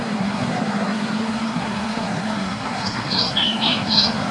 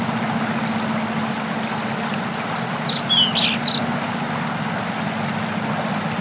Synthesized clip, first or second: first